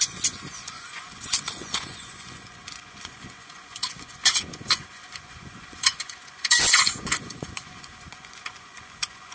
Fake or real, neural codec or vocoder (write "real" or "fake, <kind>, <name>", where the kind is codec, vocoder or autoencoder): fake, vocoder, Vocos